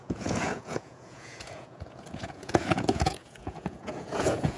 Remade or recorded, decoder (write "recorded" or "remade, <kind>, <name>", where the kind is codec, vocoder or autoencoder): remade, vocoder, Vocos